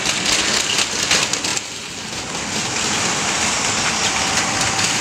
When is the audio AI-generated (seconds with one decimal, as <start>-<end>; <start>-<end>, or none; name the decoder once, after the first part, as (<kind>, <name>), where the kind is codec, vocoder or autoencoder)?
none

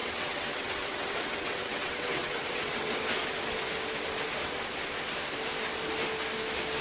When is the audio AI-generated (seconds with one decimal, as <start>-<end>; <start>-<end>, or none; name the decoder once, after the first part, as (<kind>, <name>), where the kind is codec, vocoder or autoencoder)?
0.0-2.9 (vocoder, WaveNeXt)